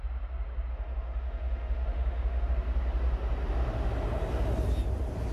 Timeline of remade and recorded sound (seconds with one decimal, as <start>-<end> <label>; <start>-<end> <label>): 0.0-0.7 recorded; 0.7-2.5 remade; 2.5-5.3 recorded